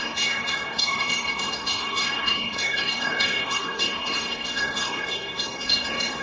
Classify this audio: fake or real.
fake